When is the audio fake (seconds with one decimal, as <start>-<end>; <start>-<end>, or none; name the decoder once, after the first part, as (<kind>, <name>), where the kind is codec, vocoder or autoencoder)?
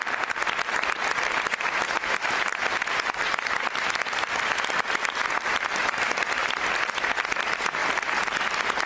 6.4-7.0 (vocoder, BigVGAN v2)